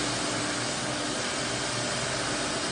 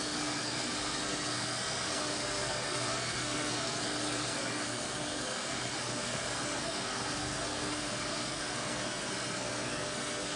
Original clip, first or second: first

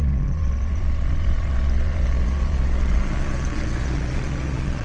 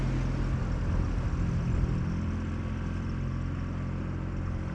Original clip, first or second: second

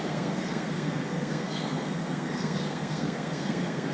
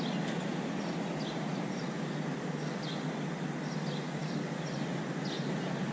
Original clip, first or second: second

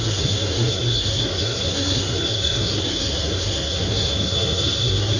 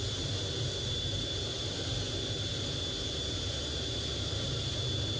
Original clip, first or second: second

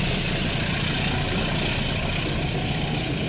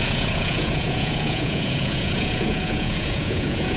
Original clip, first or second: first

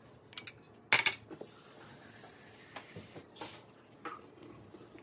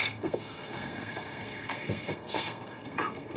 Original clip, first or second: first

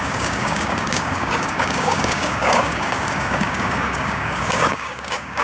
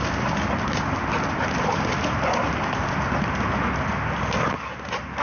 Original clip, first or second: second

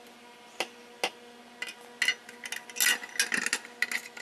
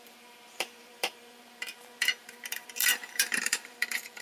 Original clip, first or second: first